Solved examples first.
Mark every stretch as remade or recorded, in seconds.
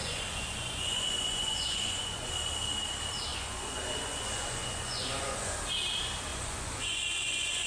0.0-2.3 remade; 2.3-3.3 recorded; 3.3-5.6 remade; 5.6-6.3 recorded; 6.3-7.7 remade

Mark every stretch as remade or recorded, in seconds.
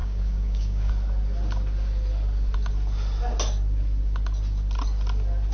0.0-0.9 remade; 0.9-5.5 recorded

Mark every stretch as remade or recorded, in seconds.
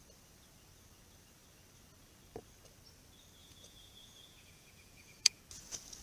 0.0-3.4 recorded; 3.4-5.4 remade; 5.4-6.0 recorded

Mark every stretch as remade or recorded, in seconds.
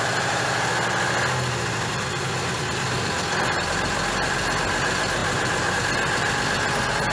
0.0-5.2 recorded; 5.2-5.7 remade; 5.7-7.1 recorded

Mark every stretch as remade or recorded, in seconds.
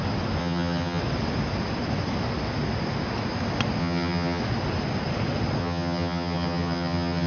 0.0-0.4 recorded; 0.4-1.0 remade; 1.0-3.8 recorded; 3.8-4.4 remade; 4.4-5.6 recorded; 5.6-7.3 remade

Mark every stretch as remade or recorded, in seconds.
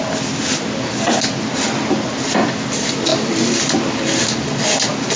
0.0-3.1 recorded; 3.1-3.6 remade; 3.6-5.2 recorded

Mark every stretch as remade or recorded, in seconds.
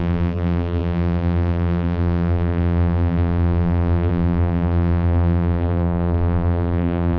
0.0-7.2 remade